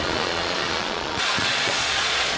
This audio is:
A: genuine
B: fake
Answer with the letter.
B